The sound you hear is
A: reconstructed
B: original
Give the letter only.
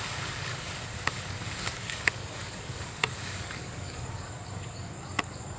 A